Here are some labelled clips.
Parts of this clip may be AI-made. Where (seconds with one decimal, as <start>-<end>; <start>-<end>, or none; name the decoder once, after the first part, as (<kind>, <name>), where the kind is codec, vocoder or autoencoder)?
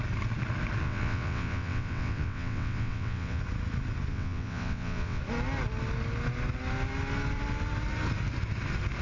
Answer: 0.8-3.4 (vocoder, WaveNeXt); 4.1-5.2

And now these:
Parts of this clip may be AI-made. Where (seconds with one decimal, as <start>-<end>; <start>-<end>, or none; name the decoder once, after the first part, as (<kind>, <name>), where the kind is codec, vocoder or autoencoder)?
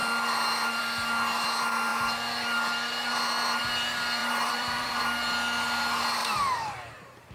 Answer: 4.2-5.0 (vocoder, BigVGAN v2); 6.2-7.3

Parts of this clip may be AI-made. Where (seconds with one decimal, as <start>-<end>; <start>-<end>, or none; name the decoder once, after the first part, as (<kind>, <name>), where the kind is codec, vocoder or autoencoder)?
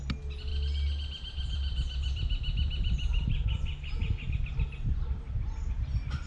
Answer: none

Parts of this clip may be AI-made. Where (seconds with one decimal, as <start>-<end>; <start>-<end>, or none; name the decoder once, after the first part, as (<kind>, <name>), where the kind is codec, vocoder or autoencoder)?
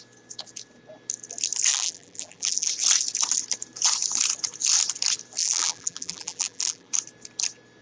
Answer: 1.7-2.7 (vocoder, BigVGAN v2); 5.4-6.9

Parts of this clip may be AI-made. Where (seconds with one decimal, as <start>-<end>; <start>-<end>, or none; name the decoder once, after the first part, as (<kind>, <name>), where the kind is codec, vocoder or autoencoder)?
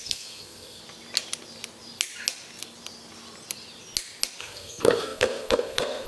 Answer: 0.0-0.8 (codec, SNAC); 4.4-6.1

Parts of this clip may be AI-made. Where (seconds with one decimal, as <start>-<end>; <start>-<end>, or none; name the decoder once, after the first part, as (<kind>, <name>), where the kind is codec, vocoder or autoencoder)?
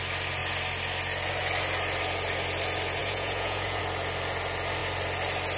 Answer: 3.0-3.8 (vocoder, Vocos)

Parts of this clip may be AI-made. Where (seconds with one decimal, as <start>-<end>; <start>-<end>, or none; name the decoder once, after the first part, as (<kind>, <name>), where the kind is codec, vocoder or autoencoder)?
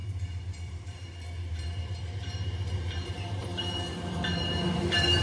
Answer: 0.0-3.5 (vocoder, BigVGAN v2); 4.1-5.2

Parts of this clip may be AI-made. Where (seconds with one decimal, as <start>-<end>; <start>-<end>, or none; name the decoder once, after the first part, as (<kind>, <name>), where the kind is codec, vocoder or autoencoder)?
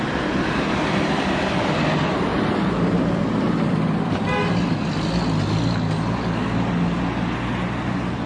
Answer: 2.3-3.2 (vocoder, BigVGAN v2)